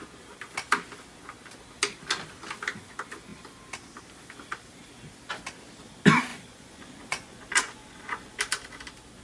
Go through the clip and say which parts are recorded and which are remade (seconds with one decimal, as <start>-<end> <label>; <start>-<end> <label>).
0.0-6.3 recorded; 6.3-8.4 remade; 8.4-9.2 recorded